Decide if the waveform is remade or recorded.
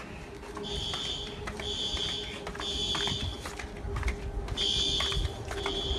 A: recorded